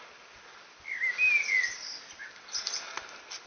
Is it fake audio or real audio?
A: real